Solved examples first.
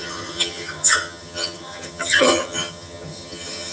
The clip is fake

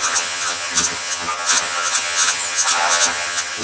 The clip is fake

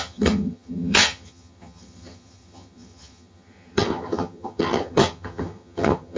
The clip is fake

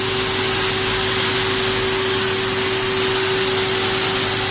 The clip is real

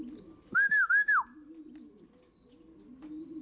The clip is real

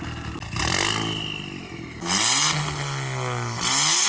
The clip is real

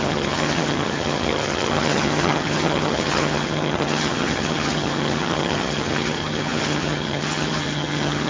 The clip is fake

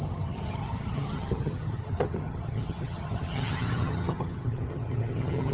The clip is fake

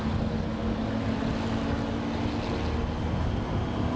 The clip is real